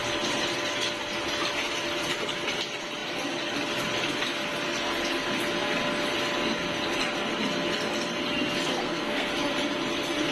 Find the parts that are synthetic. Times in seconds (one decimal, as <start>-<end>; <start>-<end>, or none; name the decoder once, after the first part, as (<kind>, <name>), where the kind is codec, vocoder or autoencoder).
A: 8.7-9.3 (codec, SNAC)